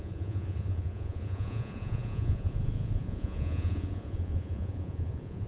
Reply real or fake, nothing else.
fake